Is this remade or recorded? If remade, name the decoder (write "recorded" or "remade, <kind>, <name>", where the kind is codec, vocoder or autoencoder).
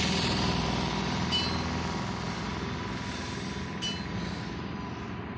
recorded